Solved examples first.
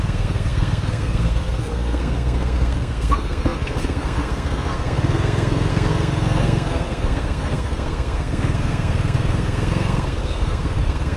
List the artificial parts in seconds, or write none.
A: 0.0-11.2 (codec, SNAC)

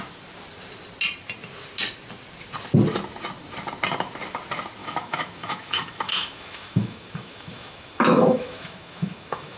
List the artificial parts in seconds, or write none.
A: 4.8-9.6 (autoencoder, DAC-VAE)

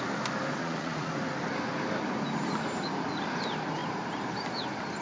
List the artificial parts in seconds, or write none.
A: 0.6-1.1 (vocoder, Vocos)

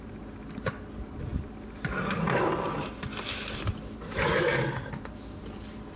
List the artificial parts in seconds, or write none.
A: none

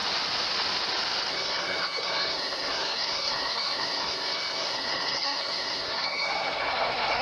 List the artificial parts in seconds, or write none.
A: 1.3-7.2 (codec, SNAC)

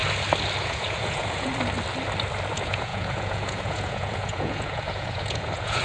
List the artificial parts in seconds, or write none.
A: 0.6-1.5 (vocoder, Vocos); 2.5-5.8

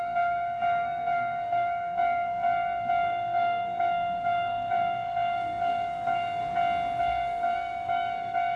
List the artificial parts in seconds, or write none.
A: 0.0-6.4 (codec, SNAC); 7.0-8.6